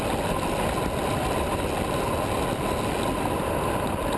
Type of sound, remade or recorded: recorded